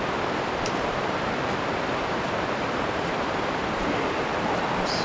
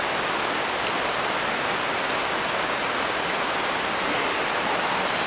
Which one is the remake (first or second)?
first